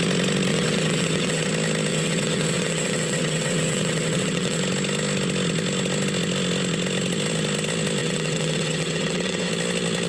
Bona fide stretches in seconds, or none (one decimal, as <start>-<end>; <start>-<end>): 0.0-0.5; 1.5-1.9; 4.6-8.0; 9.5-10.1